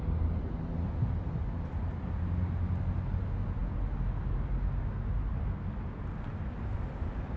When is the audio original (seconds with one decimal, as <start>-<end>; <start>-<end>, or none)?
0.0-7.4